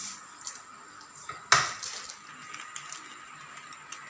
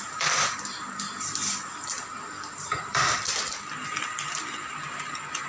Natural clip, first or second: first